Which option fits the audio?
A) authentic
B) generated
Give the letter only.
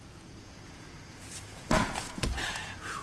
B